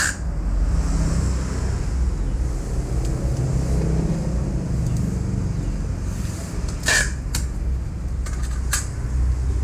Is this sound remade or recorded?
recorded